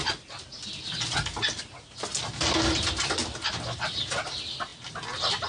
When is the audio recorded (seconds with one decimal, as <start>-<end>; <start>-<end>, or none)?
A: 0.0-5.5